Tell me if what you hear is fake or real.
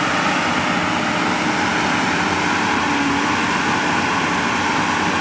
real